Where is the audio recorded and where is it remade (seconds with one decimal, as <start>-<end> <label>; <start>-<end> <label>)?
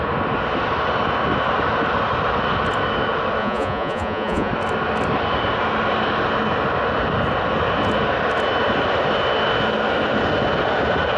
0.0-3.4 recorded; 3.4-4.5 remade; 4.5-11.2 recorded